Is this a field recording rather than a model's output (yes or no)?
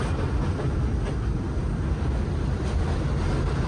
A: yes